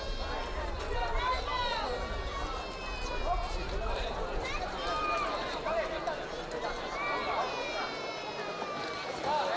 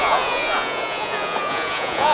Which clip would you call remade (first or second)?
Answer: second